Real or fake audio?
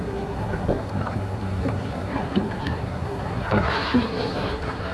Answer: fake